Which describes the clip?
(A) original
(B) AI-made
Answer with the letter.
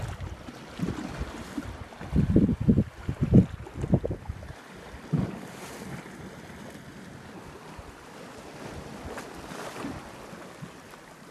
A